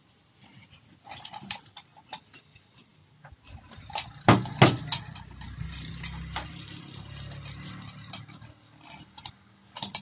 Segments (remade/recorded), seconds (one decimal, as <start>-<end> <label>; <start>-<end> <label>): 0.0-10.0 recorded